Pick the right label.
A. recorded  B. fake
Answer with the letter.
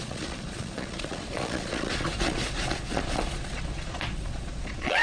B